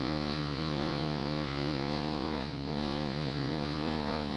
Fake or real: fake